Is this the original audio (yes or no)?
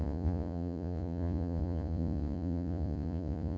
no